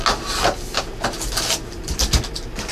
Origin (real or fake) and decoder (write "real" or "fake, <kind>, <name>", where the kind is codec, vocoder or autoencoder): real